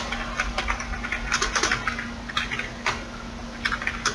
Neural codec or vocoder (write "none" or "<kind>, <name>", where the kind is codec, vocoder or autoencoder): none